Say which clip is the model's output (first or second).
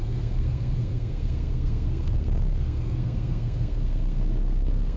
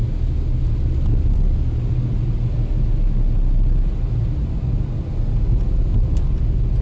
first